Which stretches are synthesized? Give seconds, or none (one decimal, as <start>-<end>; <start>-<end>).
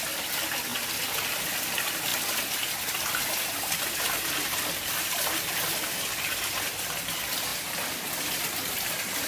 none